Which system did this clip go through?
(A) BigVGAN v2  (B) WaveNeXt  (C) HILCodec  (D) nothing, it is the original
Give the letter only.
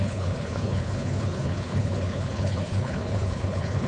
C